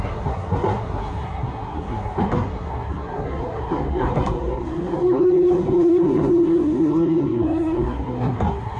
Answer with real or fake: fake